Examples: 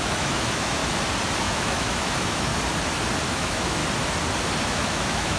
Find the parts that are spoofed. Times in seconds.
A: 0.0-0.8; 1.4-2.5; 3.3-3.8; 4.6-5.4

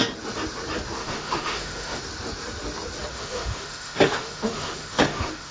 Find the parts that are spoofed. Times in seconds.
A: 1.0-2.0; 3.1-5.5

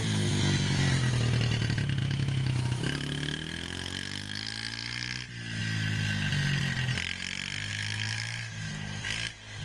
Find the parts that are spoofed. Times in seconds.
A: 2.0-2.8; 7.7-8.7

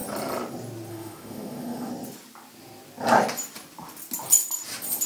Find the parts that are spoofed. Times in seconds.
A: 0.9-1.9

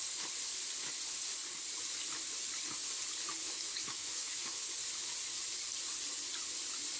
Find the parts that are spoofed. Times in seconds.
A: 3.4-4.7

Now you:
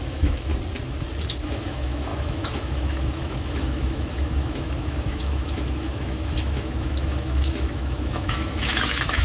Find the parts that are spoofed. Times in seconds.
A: 0.0-0.5; 1.4-9.2

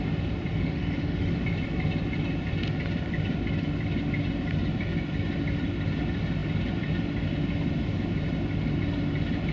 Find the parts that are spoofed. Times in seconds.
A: 0.5-1.4

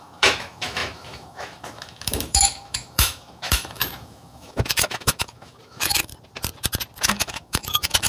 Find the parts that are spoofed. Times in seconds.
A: 0.0-6.1; 7.0-8.1